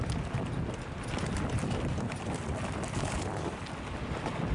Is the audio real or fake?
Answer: real